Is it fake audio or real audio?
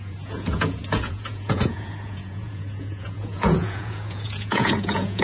fake